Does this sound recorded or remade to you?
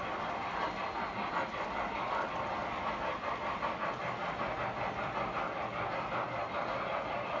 recorded